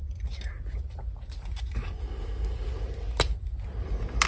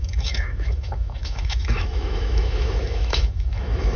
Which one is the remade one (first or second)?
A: second